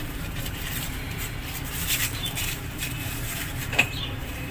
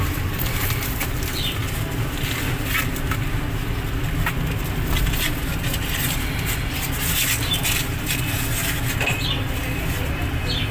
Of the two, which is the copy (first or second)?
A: first